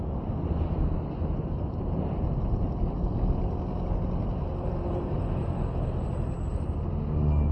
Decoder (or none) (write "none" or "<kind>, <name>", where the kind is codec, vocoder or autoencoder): none